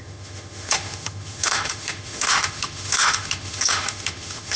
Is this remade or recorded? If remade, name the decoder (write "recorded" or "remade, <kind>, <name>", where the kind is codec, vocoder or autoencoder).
remade, autoencoder, DAC-VAE